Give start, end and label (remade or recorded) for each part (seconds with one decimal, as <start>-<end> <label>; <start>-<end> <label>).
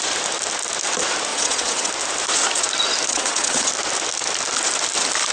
0.0-1.3 recorded; 1.3-1.9 remade; 1.9-3.1 recorded; 3.1-3.7 remade; 3.7-5.3 recorded